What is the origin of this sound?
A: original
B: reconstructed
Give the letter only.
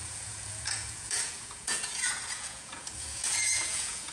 B